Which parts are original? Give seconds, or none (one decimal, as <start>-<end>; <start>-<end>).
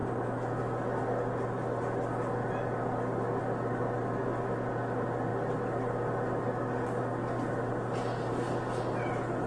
0.0-9.5